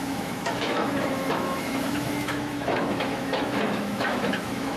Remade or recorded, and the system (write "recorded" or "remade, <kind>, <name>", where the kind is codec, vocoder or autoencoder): remade, autoencoder, DAC-VAE